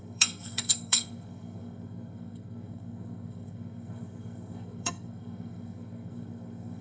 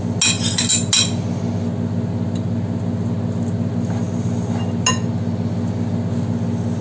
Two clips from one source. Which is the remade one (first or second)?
first